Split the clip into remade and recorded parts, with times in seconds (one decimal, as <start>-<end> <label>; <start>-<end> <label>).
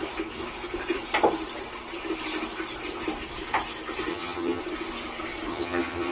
0.0-4.1 recorded; 4.1-4.6 remade; 4.6-5.5 recorded; 5.5-6.1 remade